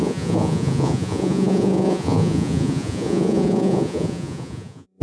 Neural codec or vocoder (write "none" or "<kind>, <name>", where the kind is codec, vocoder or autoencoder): vocoder, Vocos